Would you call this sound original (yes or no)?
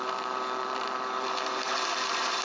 no